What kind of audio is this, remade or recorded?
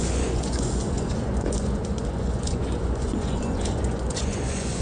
remade